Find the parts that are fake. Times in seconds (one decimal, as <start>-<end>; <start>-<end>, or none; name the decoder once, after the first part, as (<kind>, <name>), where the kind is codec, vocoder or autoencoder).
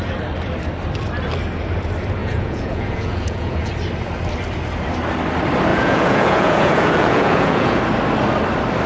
2.2-3.7 (vocoder, Vocos); 5.7-7.8